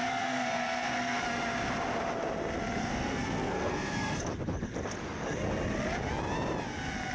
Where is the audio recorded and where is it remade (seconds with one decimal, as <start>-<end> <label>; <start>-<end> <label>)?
0.0-1.2 remade; 1.2-2.9 recorded; 2.9-4.2 remade; 4.2-7.1 recorded